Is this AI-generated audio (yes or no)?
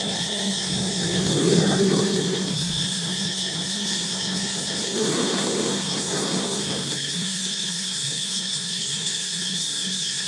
yes